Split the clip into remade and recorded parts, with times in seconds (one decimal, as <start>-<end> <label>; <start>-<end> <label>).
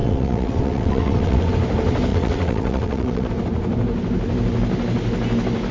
0.0-1.5 remade; 1.5-2.1 recorded; 2.1-3.3 remade; 3.3-5.7 recorded